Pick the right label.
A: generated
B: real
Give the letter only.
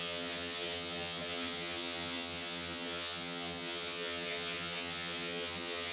A